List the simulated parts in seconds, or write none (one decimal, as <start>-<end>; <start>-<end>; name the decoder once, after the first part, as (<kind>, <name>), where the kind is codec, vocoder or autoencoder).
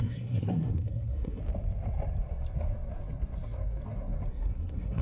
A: 0.0-1.4 (codec, SNAC); 4.3-5.0